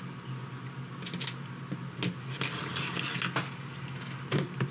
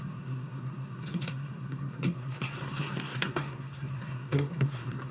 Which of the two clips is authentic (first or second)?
first